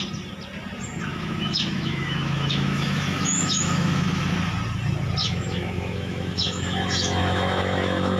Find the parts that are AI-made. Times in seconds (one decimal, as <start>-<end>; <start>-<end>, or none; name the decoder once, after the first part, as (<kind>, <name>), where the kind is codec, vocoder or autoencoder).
1.1-4.2 (autoencoder, DAC-VAE); 5.2-8.2